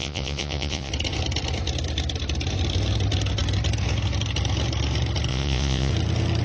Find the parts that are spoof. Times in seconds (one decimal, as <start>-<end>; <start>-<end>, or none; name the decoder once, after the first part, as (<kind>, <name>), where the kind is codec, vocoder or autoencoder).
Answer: 0.0-0.9 (vocoder, Vocos); 5.3-5.9